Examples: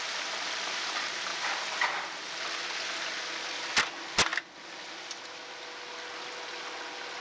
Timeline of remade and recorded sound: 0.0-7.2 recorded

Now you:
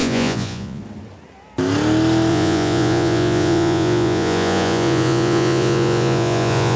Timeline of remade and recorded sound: 0.0-0.8 remade; 0.8-2.3 recorded; 2.3-6.8 remade

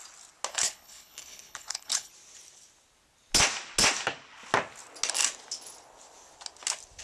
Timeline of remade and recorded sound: 0.0-0.5 recorded; 0.5-2.1 remade; 2.1-7.0 recorded

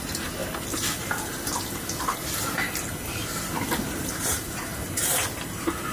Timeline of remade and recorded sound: 0.0-0.4 remade; 0.4-3.9 recorded; 3.9-4.7 remade; 4.7-5.9 recorded

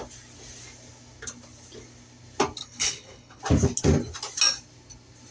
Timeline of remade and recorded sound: 0.0-2.6 recorded; 2.6-3.4 remade; 3.4-5.3 recorded

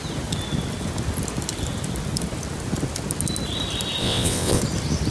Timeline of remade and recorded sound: 0.0-4.0 recorded; 4.0-4.6 remade; 4.6-5.1 recorded

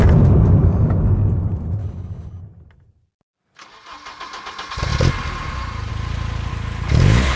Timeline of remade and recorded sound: 0.0-1.8 recorded; 1.8-2.4 remade; 2.4-6.5 recorded; 6.5-7.4 remade

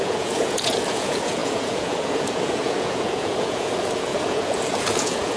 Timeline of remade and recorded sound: 0.0-5.4 remade